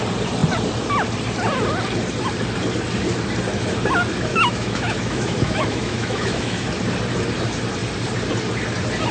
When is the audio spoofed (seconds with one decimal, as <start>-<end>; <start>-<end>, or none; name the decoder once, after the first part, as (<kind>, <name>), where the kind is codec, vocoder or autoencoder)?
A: 4.3-6.7 (autoencoder, DAC-VAE)